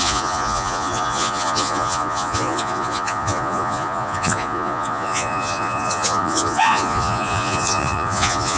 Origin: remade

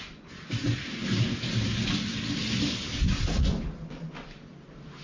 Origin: recorded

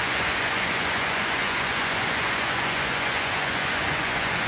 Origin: remade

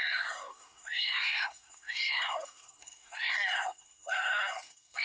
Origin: remade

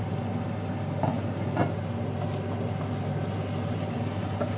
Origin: recorded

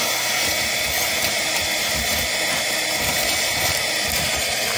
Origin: recorded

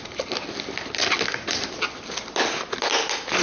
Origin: recorded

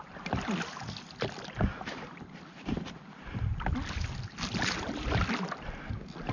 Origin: recorded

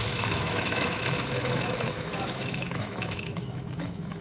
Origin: remade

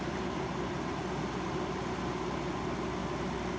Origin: recorded